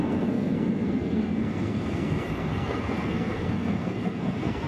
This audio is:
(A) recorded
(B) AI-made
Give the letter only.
B